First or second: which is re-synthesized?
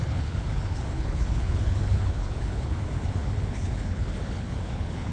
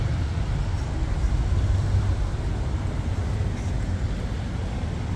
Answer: first